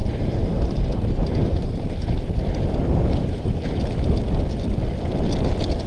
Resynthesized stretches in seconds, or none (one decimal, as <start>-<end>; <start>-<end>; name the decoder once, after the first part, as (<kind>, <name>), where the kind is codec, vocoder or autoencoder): 0.0-1.9 (vocoder, BigVGAN v2); 2.4-3.8